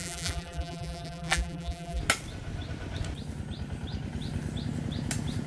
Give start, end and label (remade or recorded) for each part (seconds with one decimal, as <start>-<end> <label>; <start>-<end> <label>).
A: 0.0-2.0 remade; 2.0-5.5 recorded